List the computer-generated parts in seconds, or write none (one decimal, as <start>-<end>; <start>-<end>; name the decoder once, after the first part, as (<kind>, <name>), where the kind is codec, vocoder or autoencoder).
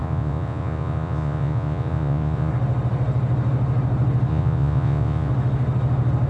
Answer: 0.0-2.5 (vocoder, Vocos); 4.3-5.3